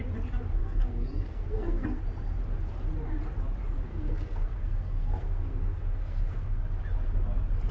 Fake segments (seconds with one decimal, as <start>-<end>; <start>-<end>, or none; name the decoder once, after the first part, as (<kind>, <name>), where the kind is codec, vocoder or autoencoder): 0.6-2.0 (codec, SNAC); 3.9-6.6